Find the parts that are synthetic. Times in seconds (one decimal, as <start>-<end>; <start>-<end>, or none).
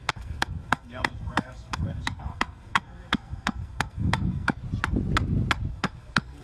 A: 0.0-4.6; 5.7-6.4